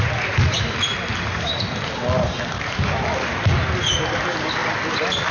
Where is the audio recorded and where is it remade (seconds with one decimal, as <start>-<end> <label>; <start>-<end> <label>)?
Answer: 0.0-5.3 recorded